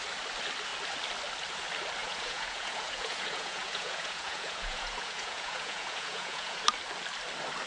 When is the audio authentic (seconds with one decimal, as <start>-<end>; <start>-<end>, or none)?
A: 0.0-2.0; 6.6-7.7